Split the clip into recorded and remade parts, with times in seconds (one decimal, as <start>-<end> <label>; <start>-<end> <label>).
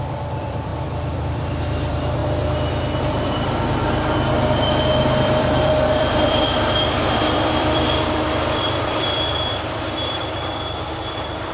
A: 0.0-2.2 remade; 2.2-3.0 recorded; 3.0-11.5 remade